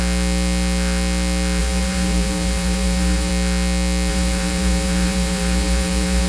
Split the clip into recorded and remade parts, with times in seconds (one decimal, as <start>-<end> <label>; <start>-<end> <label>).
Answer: 0.0-1.6 recorded; 1.6-3.3 remade; 3.3-4.1 recorded; 4.1-6.3 remade